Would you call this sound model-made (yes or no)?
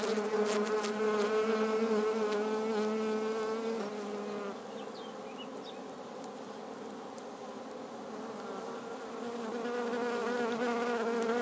no